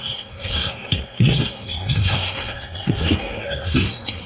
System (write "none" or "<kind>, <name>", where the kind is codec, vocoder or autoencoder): codec, SNAC